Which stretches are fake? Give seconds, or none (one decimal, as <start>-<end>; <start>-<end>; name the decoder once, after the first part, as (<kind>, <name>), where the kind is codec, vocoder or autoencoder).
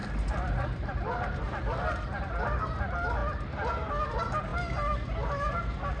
none